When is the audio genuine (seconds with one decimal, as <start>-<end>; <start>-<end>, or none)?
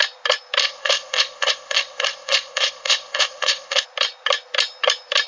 0.0-0.6; 3.8-5.3